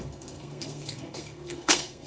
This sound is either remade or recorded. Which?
remade